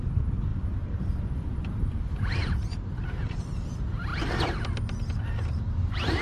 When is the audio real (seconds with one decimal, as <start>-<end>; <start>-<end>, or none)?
4.1-5.5